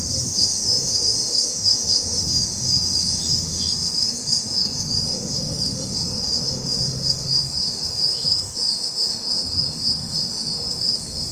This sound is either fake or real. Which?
fake